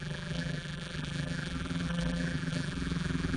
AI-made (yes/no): yes